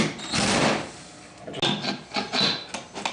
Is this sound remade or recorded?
recorded